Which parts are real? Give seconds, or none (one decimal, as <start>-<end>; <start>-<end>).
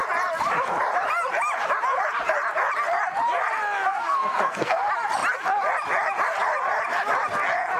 0.0-3.9; 4.8-7.8